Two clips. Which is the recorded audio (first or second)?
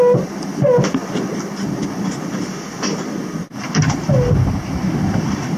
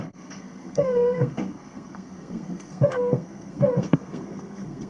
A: first